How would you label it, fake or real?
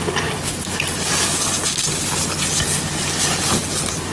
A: real